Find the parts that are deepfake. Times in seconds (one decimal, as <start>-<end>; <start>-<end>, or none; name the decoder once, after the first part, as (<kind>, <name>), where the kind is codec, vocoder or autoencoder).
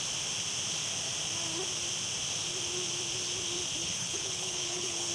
3.8-5.1 (codec, HILCodec)